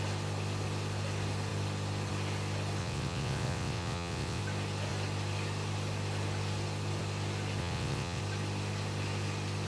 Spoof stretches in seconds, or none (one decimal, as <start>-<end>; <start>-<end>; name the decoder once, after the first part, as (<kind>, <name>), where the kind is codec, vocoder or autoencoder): 2.8-4.4 (vocoder, WaveNeXt); 7.6-8.2